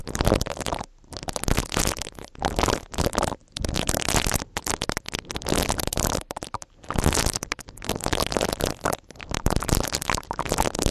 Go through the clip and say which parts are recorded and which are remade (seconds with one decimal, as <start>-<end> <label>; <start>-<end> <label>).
0.0-0.7 remade; 0.7-3.4 recorded; 3.4-4.4 remade; 4.4-10.9 recorded